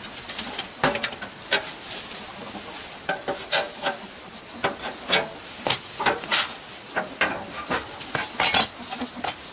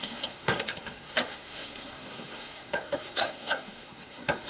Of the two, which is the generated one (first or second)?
second